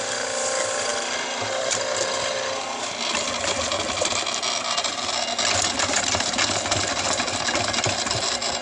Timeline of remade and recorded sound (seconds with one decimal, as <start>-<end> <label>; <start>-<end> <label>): 0.0-8.6 recorded